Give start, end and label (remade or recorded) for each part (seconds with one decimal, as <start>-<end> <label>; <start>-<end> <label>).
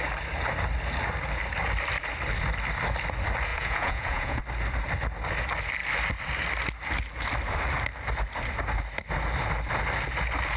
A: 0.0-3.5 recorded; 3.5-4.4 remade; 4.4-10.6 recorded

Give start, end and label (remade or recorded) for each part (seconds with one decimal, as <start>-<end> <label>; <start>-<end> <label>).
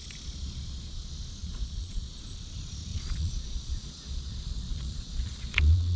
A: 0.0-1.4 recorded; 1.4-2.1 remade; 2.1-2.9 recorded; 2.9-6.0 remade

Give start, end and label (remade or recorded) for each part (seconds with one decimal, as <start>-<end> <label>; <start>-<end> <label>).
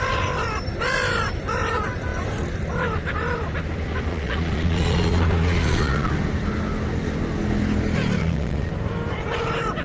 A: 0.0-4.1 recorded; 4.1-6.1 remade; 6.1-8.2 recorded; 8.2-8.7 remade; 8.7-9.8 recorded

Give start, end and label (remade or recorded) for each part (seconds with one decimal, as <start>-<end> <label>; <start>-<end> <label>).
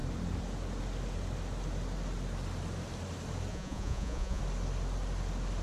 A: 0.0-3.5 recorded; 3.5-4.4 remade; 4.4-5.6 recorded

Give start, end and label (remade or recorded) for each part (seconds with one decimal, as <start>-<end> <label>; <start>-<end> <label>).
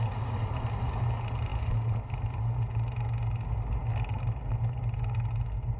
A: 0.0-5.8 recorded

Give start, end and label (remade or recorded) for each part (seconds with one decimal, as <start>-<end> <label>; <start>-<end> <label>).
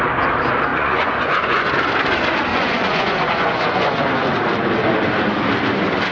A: 0.0-0.7 recorded; 0.7-1.7 remade; 1.7-2.5 recorded; 2.5-4.3 remade; 4.3-6.1 recorded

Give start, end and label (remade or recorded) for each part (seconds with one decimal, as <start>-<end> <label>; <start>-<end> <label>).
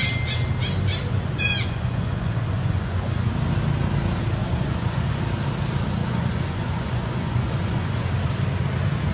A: 0.0-1.1 recorded; 1.1-3.3 remade; 3.3-4.4 recorded; 4.4-5.2 remade; 5.2-6.0 recorded; 6.0-8.1 remade; 8.1-9.1 recorded